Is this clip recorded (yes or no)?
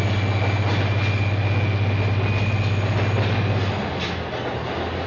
yes